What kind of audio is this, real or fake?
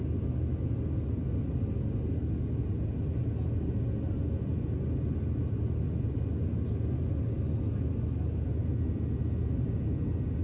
real